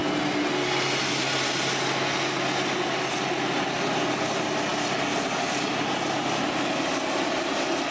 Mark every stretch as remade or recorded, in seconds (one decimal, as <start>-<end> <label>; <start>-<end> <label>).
0.0-7.9 recorded